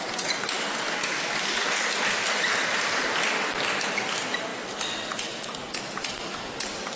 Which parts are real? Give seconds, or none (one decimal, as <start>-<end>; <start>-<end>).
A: 0.0-7.0